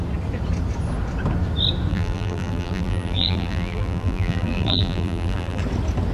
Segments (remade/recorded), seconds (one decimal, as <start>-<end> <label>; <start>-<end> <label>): 0.0-1.9 recorded; 1.9-5.6 remade; 5.6-6.1 recorded

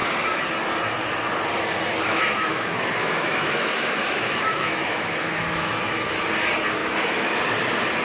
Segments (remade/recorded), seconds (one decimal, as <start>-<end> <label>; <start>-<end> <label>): 0.0-2.1 recorded; 2.1-5.7 remade; 5.7-6.8 recorded; 6.8-7.4 remade; 7.4-8.0 recorded

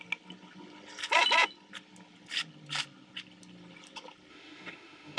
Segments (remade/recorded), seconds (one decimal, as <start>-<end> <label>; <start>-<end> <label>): 0.0-4.3 recorded; 4.3-5.2 remade

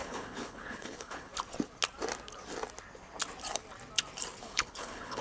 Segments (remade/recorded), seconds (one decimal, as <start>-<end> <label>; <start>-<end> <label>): 0.0-1.3 remade; 1.3-4.4 recorded; 4.4-5.2 remade

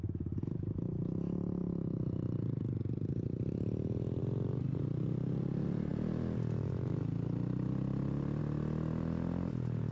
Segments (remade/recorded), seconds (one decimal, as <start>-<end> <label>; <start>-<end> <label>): 0.0-9.9 recorded

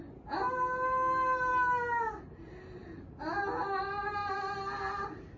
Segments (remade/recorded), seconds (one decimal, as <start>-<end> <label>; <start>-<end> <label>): 0.0-5.4 recorded